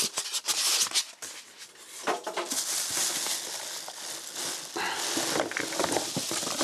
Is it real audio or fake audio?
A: real